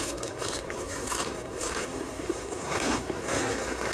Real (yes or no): no